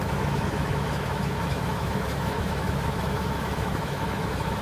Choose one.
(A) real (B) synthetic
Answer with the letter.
B